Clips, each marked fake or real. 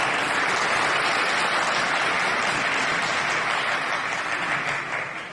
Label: real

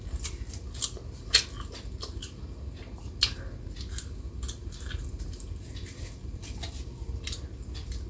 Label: real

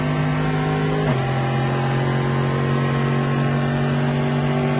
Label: real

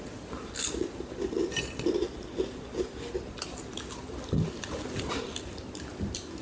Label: real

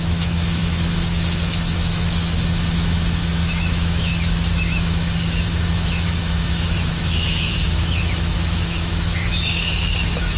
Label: fake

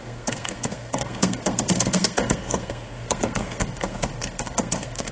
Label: fake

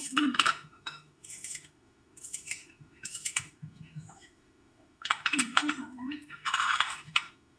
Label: fake